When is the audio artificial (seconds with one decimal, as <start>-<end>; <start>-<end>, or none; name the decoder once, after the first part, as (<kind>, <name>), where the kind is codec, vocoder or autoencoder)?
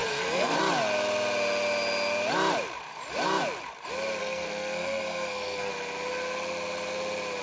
0.0-0.6 (codec, SNAC); 4.2-5.7